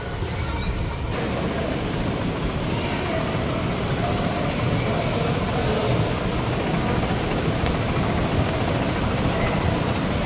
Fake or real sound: real